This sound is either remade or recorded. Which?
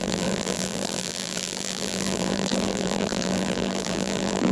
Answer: remade